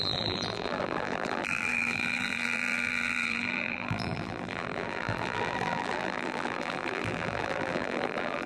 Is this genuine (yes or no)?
no